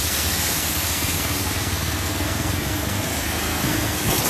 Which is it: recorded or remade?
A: remade